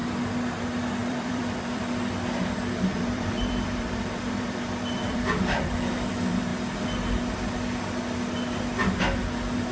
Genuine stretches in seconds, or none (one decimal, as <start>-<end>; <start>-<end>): 0.0-1.0; 1.8-2.9; 6.1-9.7